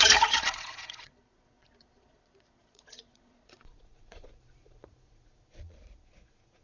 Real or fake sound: fake